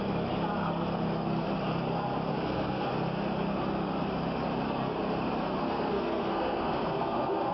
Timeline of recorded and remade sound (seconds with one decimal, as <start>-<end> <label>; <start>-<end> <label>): 0.0-2.3 recorded; 2.3-2.9 remade; 2.9-5.6 recorded; 5.6-7.5 remade